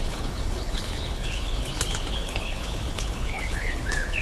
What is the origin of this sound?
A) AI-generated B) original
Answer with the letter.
A